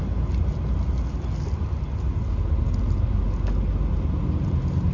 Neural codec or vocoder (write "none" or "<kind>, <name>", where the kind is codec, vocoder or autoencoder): none